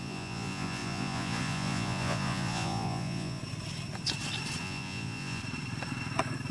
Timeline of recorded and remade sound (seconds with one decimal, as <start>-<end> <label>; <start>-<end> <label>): 0.0-3.4 remade; 3.4-4.6 recorded; 4.6-5.4 remade; 5.4-6.5 recorded